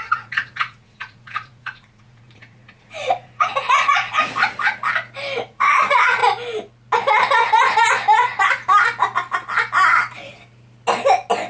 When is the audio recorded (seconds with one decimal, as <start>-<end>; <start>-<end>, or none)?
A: 4.2-5.5; 6.2-11.5